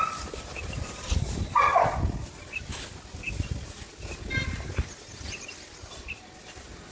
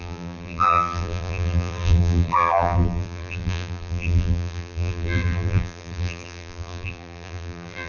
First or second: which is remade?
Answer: second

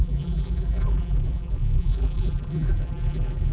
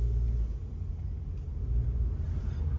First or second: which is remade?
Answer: first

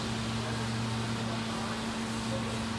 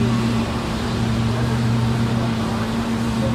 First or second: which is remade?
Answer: second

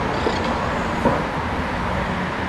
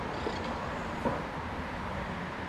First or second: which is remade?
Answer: second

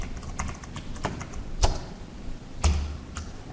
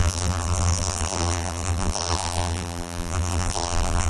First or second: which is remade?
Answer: second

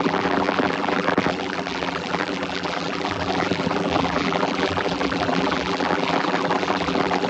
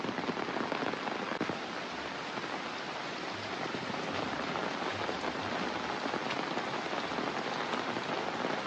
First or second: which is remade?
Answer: first